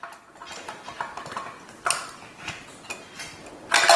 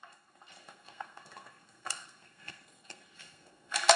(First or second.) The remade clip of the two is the second